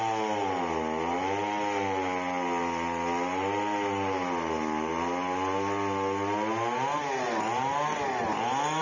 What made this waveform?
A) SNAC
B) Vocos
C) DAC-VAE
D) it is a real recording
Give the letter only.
D